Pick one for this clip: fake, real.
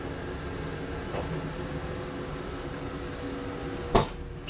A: real